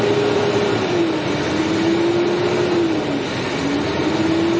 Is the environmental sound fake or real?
real